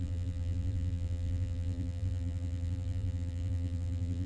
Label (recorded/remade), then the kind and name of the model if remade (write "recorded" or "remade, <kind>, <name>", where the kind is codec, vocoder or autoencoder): remade, vocoder, BigVGAN v2